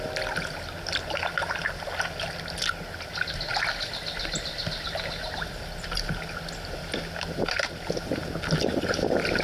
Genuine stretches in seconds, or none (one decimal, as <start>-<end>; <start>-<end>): 0.0-9.4